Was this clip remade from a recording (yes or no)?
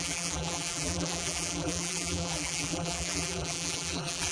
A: yes